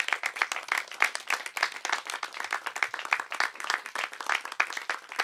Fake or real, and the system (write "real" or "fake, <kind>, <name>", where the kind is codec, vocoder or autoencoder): real